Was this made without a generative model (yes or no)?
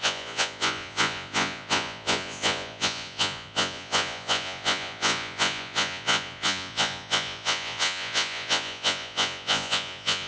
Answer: no